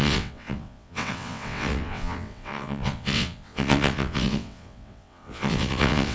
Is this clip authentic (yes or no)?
no